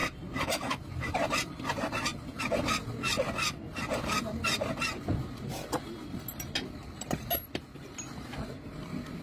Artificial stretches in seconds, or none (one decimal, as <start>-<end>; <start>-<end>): none